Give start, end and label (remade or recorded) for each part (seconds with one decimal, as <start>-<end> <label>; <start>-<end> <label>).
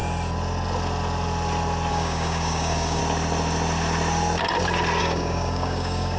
0.0-1.9 recorded; 1.9-3.0 remade; 3.0-5.0 recorded; 5.0-6.2 remade